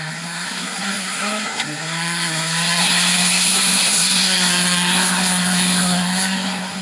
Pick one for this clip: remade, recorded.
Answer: remade